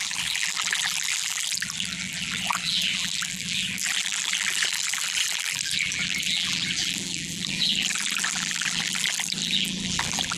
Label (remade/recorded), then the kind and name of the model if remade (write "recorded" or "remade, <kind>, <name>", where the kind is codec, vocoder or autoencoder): remade, vocoder, BigVGAN v2